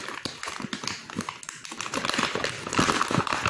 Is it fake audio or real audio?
real